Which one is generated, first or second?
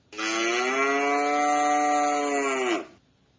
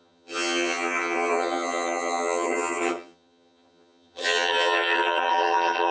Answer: second